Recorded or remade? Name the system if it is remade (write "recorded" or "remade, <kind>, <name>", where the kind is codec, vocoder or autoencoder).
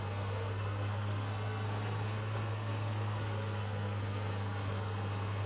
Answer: remade, codec, SNAC